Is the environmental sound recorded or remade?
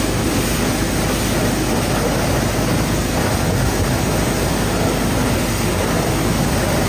recorded